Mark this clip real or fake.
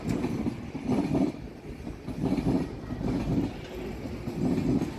real